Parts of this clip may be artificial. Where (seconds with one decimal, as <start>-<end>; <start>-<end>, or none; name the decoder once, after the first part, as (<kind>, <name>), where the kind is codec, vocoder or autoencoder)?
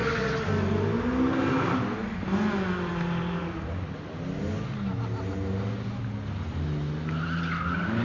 none